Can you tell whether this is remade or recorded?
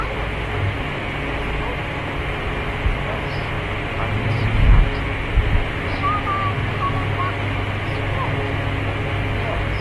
recorded